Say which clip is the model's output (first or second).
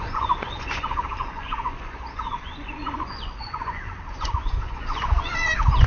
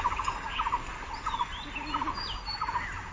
first